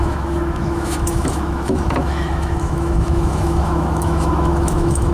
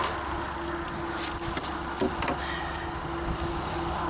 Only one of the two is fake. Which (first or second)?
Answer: first